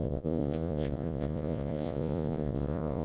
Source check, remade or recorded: remade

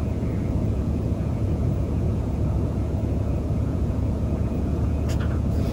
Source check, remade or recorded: remade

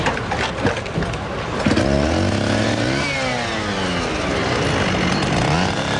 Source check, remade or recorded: recorded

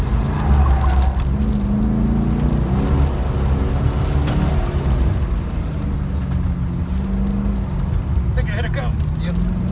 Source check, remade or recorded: recorded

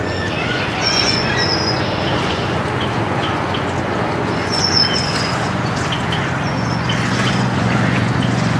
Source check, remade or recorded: remade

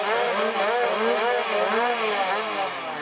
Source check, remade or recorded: recorded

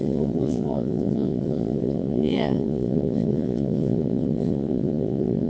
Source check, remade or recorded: remade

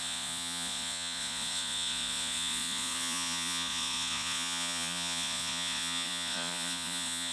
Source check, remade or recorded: remade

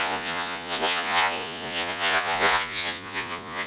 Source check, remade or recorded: remade